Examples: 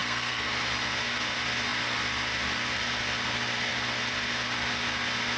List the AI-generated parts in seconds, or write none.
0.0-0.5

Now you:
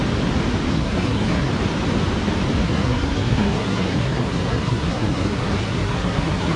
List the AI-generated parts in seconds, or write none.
0.7-1.5; 2.6-6.6

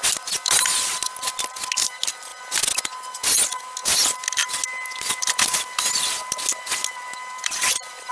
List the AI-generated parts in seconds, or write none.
none

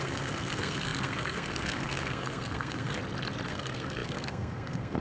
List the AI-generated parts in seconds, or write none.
0.0-3.0; 3.5-5.0

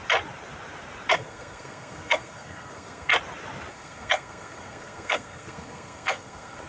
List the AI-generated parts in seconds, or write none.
1.1-3.1; 3.7-6.7

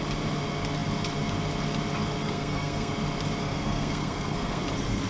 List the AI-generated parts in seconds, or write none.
2.2-2.9; 3.4-4.6

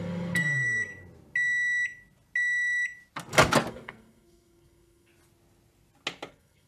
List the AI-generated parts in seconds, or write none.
0.0-0.9; 3.7-5.1; 6.3-6.7

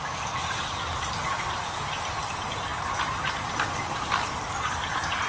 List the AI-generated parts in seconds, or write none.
none